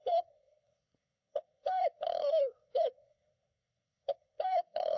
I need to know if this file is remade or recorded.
remade